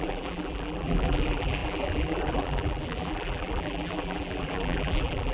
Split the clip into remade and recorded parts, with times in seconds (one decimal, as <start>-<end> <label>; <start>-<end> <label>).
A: 0.0-5.3 remade